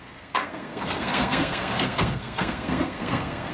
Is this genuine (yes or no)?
no